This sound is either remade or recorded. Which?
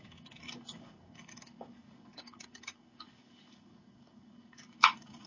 remade